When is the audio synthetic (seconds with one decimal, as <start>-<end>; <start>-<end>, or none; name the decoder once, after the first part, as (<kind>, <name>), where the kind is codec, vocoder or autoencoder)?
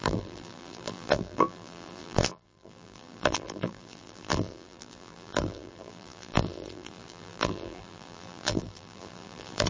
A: 0.0-9.7 (vocoder, BigVGAN v2)